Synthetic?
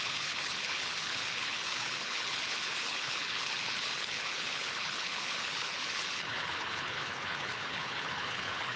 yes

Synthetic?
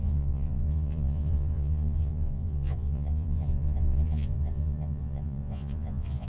yes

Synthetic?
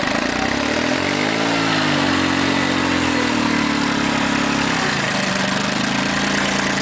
no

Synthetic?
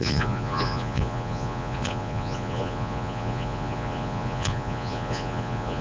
yes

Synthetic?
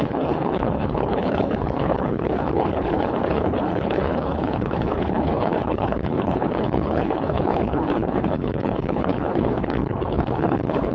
yes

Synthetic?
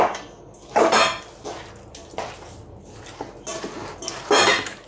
no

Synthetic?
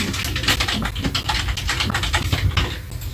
no